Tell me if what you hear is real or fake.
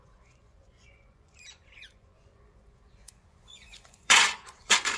fake